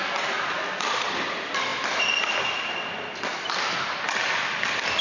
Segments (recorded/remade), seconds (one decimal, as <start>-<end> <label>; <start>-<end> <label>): 0.0-5.0 recorded